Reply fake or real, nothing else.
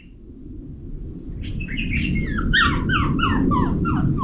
real